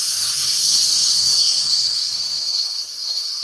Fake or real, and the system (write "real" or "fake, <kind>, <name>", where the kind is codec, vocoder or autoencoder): fake, codec, SNAC